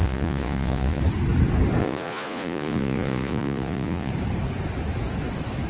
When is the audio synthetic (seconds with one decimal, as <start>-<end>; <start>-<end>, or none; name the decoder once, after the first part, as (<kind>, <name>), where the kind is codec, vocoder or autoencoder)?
0.0-1.0 (vocoder, Vocos); 1.8-4.1